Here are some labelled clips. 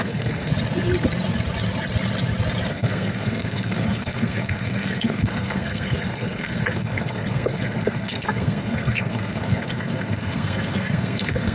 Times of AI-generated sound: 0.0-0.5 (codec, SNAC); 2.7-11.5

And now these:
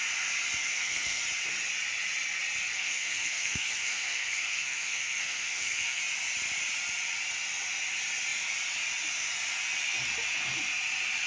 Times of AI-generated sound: 0.6-1.2 (codec, SNAC); 2.7-6.0

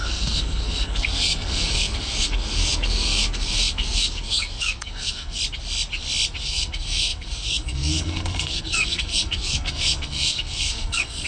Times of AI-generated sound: 0.0-5.4 (codec, SNAC); 6.4-11.3

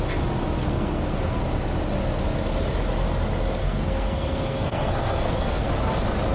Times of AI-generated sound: 0.6-1.4 (codec, SNAC); 3.6-5.7

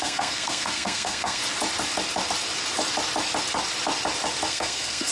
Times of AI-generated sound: 0.0-1.4 (codec, SNAC); 4.5-5.1

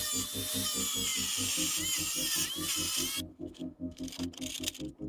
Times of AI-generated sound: 3.3-4.0 (codec, SNAC)